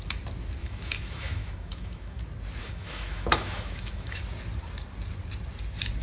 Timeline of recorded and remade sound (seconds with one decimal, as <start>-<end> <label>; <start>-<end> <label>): 0.0-0.6 recorded; 0.6-2.2 remade; 2.2-2.6 recorded; 2.6-4.2 remade; 4.2-6.0 recorded